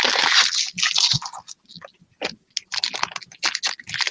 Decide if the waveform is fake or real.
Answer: real